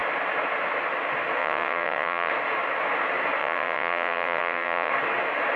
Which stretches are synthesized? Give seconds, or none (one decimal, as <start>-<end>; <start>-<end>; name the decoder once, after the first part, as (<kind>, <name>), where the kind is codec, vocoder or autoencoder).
1.4-2.3 (vocoder, WaveNeXt); 3.4-4.9